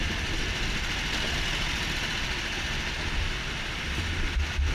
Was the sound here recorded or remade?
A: recorded